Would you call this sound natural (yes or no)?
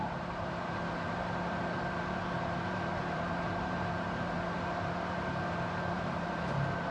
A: no